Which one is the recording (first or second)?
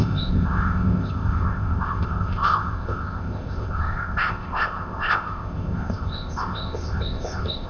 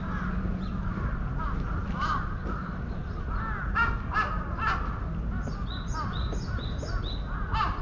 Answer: second